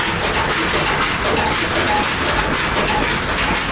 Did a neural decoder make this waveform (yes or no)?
no